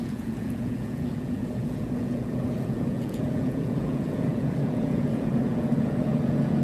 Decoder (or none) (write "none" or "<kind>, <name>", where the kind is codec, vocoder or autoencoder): vocoder, Vocos